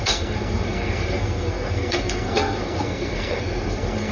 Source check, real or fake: fake